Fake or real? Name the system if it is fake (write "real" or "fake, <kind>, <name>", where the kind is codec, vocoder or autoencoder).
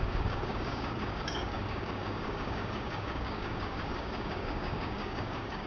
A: fake, codec, DAC